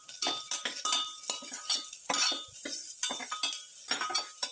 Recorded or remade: recorded